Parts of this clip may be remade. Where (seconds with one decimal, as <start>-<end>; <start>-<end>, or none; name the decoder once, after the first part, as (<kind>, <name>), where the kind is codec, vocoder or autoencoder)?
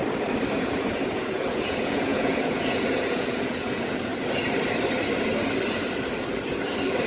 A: 0.5-4.1 (vocoder, Vocos)